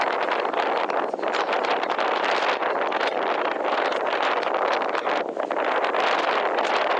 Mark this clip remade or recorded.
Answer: recorded